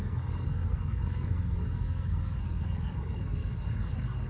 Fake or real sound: fake